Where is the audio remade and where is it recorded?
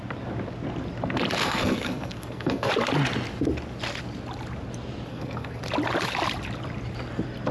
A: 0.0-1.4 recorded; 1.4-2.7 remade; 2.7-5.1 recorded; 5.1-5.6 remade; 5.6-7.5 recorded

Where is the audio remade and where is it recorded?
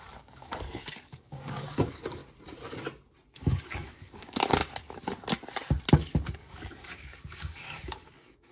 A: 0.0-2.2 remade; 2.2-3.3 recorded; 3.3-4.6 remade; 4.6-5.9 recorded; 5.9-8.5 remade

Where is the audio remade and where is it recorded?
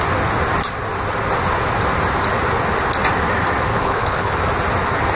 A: 0.0-3.7 recorded; 3.7-4.4 remade; 4.4-5.2 recorded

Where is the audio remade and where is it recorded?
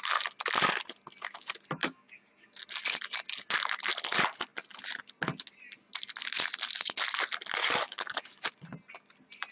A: 0.0-1.8 recorded; 1.8-2.5 remade; 2.5-7.6 recorded; 7.6-8.5 remade; 8.5-9.5 recorded